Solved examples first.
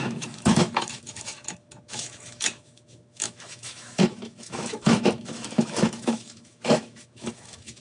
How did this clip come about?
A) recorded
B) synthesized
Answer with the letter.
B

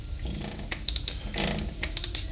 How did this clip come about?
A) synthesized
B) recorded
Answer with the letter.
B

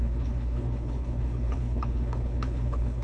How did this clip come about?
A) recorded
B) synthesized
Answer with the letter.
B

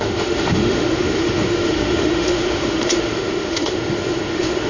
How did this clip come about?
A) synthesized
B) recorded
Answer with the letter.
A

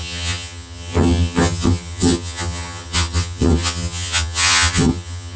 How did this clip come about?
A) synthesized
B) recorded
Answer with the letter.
A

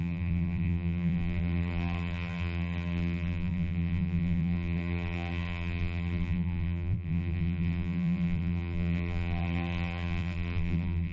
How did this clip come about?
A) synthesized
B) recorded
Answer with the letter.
A